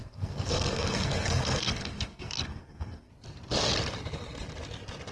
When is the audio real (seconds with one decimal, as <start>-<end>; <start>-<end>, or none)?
3.1-5.1